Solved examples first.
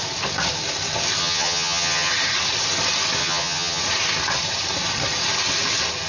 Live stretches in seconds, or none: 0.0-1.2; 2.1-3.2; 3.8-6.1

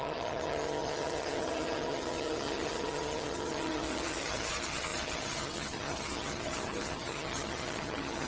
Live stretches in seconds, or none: none

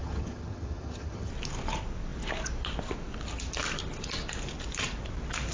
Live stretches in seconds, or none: 1.3-5.5

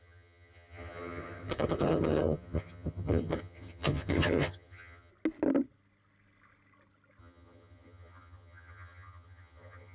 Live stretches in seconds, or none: 5.1-7.2